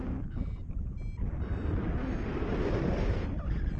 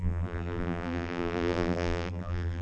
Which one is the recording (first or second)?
first